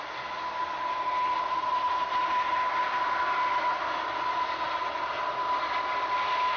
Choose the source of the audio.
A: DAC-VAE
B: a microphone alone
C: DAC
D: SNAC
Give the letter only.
B